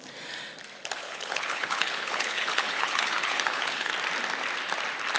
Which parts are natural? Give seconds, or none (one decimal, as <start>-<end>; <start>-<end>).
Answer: 0.0-1.0; 3.9-5.2